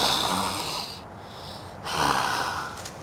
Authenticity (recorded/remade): recorded